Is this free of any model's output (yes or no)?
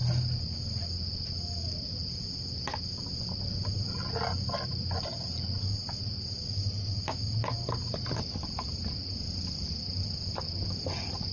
yes